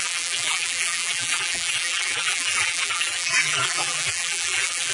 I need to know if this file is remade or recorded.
remade